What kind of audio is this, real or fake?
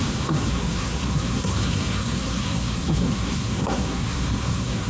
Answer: fake